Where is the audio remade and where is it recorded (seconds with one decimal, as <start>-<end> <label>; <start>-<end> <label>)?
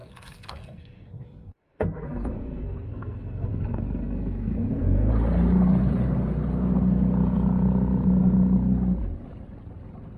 0.0-5.1 remade; 5.1-10.2 recorded